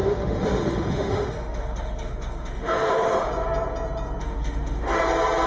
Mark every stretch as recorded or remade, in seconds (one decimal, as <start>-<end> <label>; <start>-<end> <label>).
0.0-3.3 remade; 3.3-4.2 recorded; 4.2-5.0 remade; 5.0-5.5 recorded